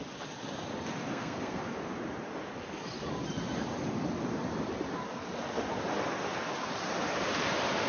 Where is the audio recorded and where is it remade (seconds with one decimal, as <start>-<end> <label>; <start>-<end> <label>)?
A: 0.0-1.1 recorded; 1.1-1.6 remade; 1.6-7.9 recorded